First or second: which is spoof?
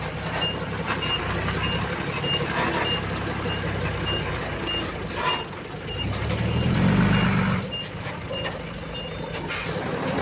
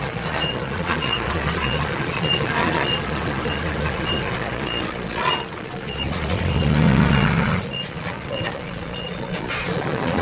second